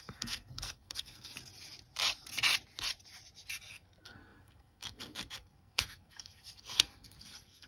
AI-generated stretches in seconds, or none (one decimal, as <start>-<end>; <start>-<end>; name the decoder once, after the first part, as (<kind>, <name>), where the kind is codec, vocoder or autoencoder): 0.0-1.3 (codec, SNAC); 3.7-7.7

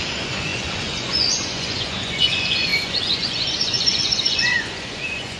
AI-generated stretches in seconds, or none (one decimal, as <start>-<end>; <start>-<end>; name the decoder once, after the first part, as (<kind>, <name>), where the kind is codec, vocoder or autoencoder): 0.0-5.4 (vocoder, Vocos)